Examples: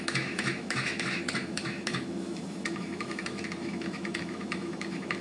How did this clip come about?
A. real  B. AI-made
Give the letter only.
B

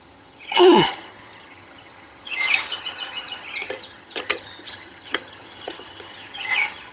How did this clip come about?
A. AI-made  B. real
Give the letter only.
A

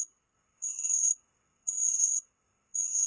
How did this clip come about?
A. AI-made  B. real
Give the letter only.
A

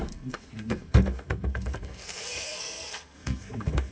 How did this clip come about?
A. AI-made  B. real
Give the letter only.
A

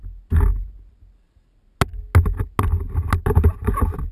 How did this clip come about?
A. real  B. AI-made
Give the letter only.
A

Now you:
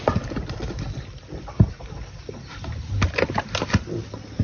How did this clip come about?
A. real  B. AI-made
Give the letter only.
A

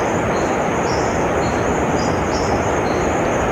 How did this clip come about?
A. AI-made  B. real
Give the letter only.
B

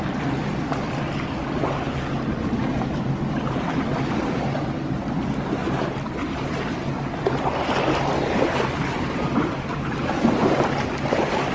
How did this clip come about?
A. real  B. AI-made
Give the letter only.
A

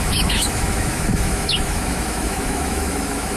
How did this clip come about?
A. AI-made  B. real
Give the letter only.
A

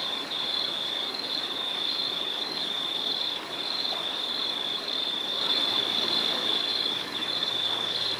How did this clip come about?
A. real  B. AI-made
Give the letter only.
B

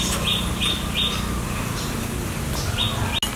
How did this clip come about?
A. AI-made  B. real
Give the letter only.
B